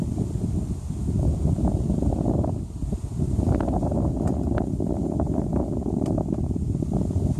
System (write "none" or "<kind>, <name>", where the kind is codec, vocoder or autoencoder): none